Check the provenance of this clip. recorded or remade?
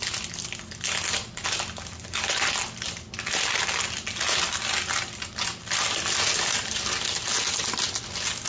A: recorded